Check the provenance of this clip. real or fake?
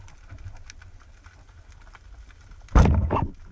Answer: real